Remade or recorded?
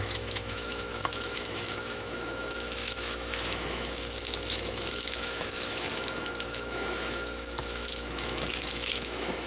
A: remade